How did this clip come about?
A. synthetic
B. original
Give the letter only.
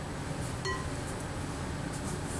B